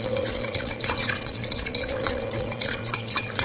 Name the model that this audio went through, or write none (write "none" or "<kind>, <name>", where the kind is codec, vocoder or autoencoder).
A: vocoder, Vocos